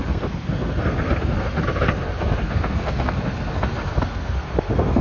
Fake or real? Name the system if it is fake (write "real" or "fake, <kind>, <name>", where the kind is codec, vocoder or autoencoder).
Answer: fake, codec, SNAC